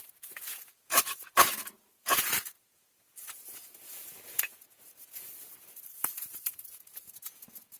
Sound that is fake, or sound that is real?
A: fake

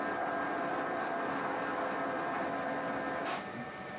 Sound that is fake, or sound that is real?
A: real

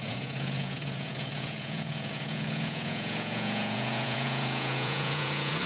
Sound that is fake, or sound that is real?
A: fake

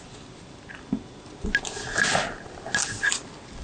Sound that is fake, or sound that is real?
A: real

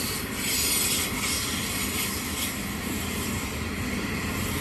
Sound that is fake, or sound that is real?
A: real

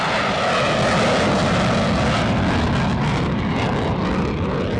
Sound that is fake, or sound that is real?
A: real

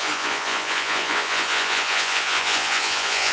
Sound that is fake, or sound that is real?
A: fake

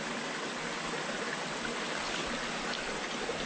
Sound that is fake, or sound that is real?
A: real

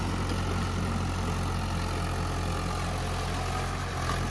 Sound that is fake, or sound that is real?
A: real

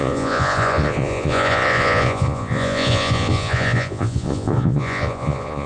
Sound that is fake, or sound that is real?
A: fake